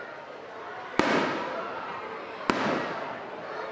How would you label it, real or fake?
real